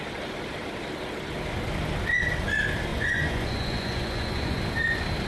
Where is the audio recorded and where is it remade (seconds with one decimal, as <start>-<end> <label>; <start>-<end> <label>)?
0.0-2.9 recorded; 2.9-4.6 remade; 4.6-5.3 recorded